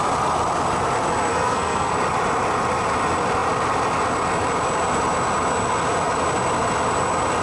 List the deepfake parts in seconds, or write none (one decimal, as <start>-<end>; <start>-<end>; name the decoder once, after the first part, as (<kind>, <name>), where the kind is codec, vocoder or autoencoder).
1.3-1.9 (codec, SNAC)